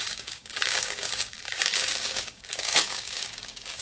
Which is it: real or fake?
fake